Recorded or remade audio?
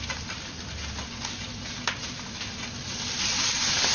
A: recorded